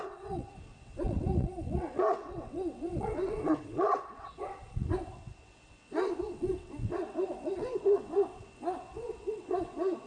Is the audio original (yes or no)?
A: no